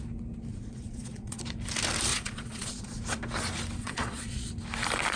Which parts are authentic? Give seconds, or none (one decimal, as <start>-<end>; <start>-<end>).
0.0-0.5; 1.4-2.1; 3.0-3.8; 4.5-5.2